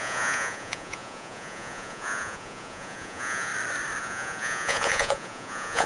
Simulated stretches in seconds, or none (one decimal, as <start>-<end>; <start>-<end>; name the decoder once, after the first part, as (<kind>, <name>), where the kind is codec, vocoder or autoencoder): 0.0-3.5 (vocoder, Vocos); 4.0-5.9